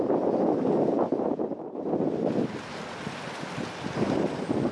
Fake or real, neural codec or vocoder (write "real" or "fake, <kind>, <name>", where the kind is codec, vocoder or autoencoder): real